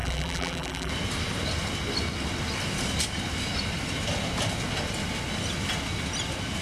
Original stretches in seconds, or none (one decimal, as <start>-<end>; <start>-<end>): 0.9-6.6

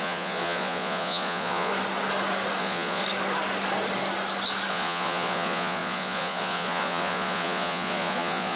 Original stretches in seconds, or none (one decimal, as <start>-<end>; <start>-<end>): 1.7-2.6; 3.0-4.7